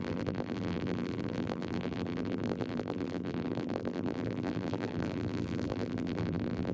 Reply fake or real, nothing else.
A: fake